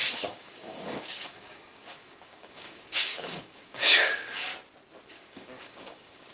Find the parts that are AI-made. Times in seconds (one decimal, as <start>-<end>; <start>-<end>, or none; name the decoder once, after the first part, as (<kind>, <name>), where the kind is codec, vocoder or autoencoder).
0.0-4.5 (codec, DAC); 5.1-6.3